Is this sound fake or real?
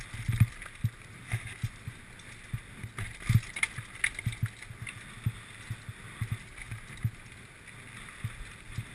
real